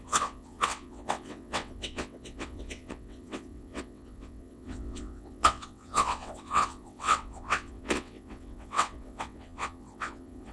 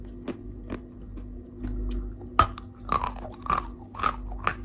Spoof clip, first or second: first